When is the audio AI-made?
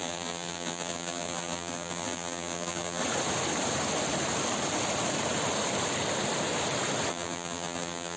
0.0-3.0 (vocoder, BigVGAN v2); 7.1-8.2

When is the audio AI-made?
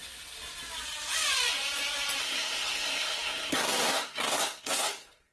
2.2-5.3 (codec, SNAC)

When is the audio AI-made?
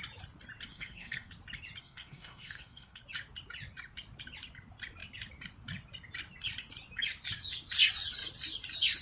0.7-1.3 (codec, SNAC); 1.8-3.0